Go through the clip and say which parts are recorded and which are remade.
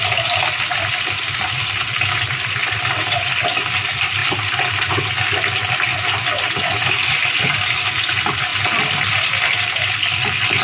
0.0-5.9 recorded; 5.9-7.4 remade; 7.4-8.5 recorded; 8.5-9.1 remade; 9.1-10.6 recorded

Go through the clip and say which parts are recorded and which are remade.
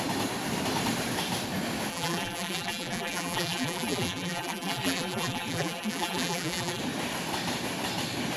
0.0-1.9 recorded; 1.9-6.8 remade; 6.8-8.4 recorded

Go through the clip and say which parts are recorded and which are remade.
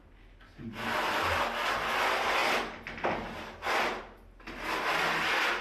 0.0-5.6 recorded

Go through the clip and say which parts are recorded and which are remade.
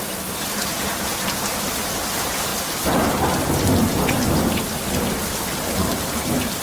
0.0-2.5 remade; 2.5-6.6 recorded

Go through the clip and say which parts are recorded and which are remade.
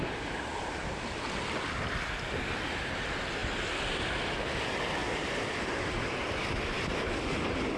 0.0-5.0 recorded; 5.0-5.9 remade; 5.9-7.8 recorded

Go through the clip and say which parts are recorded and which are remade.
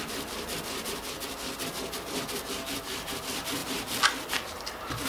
0.0-3.6 remade; 3.6-4.3 recorded; 4.3-5.1 remade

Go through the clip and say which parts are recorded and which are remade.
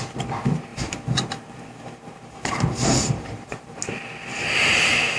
0.0-0.7 recorded; 0.7-3.8 remade; 3.8-4.3 recorded; 4.3-4.8 remade; 4.8-5.2 recorded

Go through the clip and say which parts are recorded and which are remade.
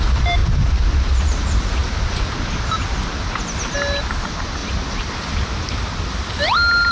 0.0-0.4 remade; 0.4-1.2 recorded; 1.2-1.8 remade; 1.8-4.0 recorded; 4.0-4.6 remade; 4.6-6.9 recorded